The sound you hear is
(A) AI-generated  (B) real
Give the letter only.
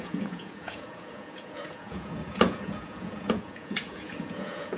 A